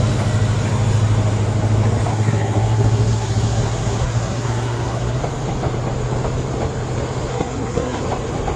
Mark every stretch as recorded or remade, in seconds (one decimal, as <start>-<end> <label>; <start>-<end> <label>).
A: 0.0-2.1 recorded; 2.1-5.2 remade; 5.2-7.3 recorded; 7.3-8.0 remade; 8.0-8.6 recorded